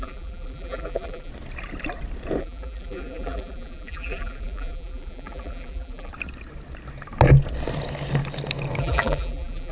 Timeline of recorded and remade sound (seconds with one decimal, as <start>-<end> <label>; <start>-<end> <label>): 0.0-1.3 remade; 1.3-2.4 recorded; 2.4-6.1 remade; 6.1-8.8 recorded; 8.8-9.7 remade